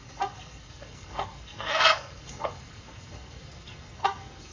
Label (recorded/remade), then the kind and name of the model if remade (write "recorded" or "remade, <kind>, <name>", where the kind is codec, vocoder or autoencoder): remade, codec, SNAC